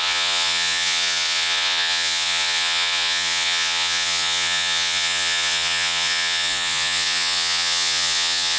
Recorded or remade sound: remade